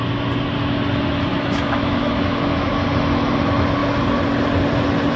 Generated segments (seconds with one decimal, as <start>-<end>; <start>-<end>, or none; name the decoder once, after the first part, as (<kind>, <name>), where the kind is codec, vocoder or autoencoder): 1.3-2.7 (autoencoder, DAC-VAE)